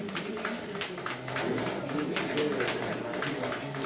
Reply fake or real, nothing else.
real